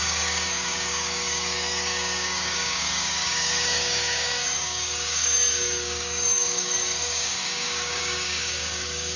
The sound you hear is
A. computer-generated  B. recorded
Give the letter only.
A